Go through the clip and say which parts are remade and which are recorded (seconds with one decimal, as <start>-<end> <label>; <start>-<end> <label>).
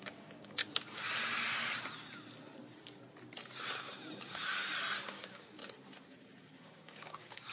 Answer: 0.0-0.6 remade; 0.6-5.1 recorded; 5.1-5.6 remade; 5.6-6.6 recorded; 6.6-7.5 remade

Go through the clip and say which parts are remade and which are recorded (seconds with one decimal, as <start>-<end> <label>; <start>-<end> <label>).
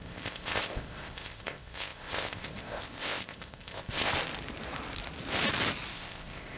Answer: 0.0-4.1 remade; 4.1-5.9 recorded; 5.9-6.6 remade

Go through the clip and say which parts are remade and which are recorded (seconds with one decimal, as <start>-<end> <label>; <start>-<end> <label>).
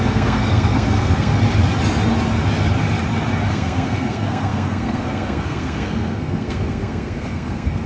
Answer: 0.0-1.3 remade; 1.3-3.5 recorded; 3.5-7.9 remade